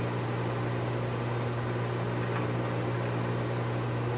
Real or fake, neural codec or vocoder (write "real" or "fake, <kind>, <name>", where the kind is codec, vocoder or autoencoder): real